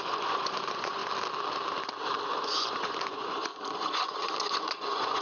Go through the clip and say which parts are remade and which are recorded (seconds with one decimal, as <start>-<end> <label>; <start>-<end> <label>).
0.0-1.0 remade; 1.0-2.4 recorded; 2.4-5.2 remade